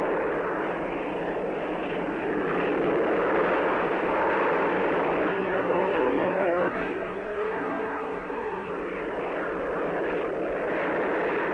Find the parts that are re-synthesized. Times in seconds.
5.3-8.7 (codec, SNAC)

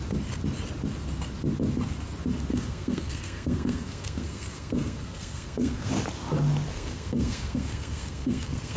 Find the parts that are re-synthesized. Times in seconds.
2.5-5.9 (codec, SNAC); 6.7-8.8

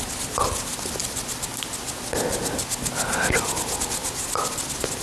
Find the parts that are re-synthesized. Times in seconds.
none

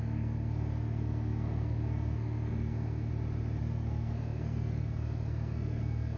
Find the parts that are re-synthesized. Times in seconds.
0.0-3.1 (codec, SNAC); 3.6-6.2

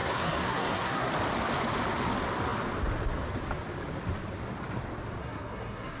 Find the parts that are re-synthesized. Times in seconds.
0.0-1.1 (codec, SNAC); 5.2-6.0

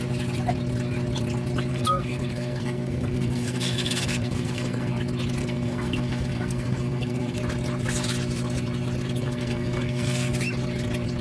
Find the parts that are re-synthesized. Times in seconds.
1.7-5.0 (codec, SNAC); 5.4-7.4; 9.2-10.3